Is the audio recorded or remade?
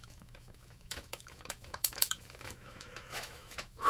remade